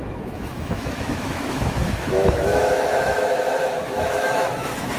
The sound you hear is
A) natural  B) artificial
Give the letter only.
B